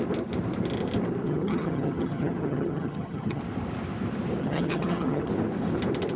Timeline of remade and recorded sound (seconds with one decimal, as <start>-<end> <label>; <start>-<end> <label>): 0.0-1.2 recorded; 1.2-3.4 remade; 3.4-4.4 recorded; 4.4-5.3 remade; 5.3-6.2 recorded